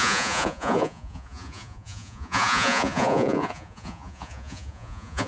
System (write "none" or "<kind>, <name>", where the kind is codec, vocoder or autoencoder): vocoder, Vocos